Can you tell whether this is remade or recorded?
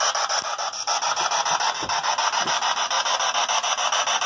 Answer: remade